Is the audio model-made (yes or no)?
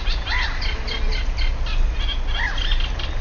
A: no